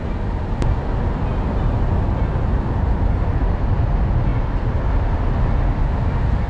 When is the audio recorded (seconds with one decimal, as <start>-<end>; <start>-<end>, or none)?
0.0-6.5